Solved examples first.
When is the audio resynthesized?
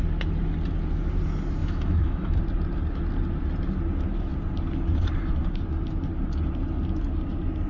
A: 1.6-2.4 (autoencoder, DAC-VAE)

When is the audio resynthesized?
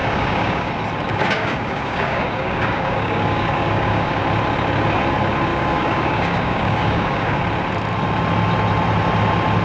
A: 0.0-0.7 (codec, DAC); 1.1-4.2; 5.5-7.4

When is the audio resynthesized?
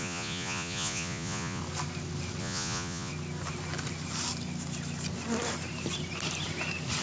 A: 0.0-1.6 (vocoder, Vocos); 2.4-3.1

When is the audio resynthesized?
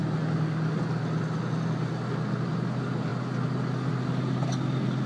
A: none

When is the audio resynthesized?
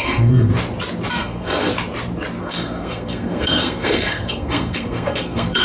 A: 0.0-0.5 (codec, SNAC); 1.1-1.7; 2.4-5.6